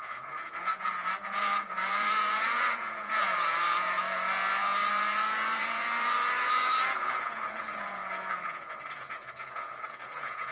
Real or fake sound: fake